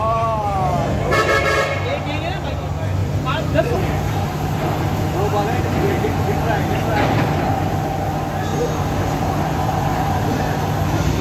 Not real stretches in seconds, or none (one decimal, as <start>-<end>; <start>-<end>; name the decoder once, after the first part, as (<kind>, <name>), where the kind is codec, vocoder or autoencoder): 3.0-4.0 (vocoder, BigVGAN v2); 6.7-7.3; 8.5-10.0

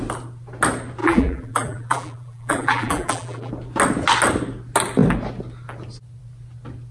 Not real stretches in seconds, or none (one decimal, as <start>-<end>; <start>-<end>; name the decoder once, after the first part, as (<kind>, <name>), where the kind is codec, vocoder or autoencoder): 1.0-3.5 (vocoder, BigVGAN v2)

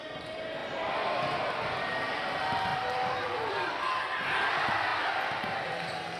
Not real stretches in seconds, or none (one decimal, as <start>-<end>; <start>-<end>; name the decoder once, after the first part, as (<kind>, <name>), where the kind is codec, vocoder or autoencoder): 2.7-3.8 (vocoder, BigVGAN v2)